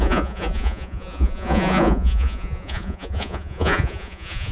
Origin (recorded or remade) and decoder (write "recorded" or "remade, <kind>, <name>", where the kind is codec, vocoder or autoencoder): remade, vocoder, Vocos